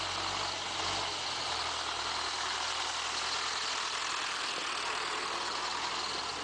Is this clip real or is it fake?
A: real